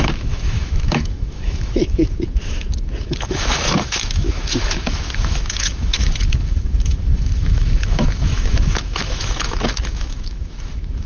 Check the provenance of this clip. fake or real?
fake